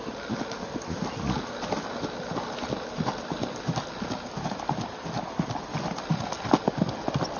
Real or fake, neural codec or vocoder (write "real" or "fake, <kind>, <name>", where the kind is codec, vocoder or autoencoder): real